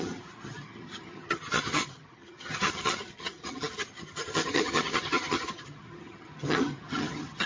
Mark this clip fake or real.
fake